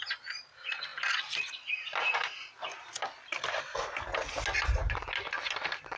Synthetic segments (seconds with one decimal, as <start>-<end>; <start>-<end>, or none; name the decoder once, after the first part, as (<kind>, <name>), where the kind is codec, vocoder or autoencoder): none